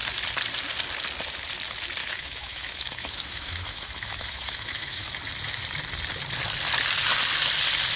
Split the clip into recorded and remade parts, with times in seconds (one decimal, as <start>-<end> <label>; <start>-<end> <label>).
0.0-2.0 recorded; 2.0-5.1 remade; 5.1-8.0 recorded